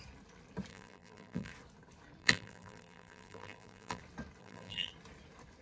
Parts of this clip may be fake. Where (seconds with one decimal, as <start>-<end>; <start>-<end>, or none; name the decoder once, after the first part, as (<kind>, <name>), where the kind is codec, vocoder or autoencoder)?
0.7-1.5 (vocoder, BigVGAN v2); 2.2-4.0; 4.4-4.9